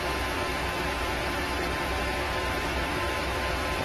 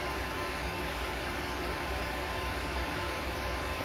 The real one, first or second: first